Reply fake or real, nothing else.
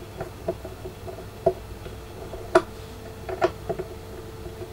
real